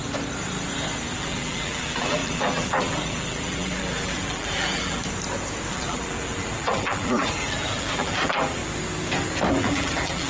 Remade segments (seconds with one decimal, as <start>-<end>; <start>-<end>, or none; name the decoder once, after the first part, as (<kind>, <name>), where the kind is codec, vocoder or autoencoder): 1.1-5.0 (vocoder, BigVGAN v2); 5.7-8.6; 9.5-10.3